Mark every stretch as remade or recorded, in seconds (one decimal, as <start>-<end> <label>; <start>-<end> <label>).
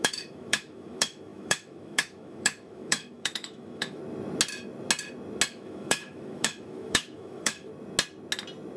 0.0-4.0 remade; 4.0-5.5 recorded; 5.5-7.7 remade; 7.7-8.8 recorded